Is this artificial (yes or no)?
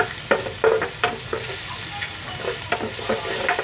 no